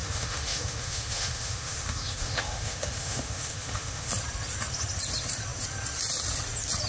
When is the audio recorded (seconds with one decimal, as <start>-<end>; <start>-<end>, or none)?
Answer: 4.1-6.9